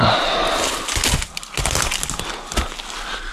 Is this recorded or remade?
recorded